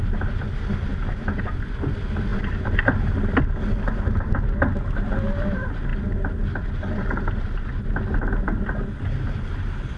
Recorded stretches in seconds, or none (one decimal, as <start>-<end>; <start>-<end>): 0.0-10.0